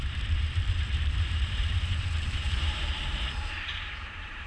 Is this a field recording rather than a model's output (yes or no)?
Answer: no